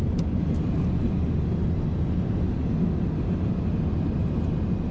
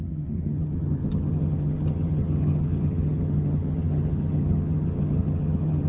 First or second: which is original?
first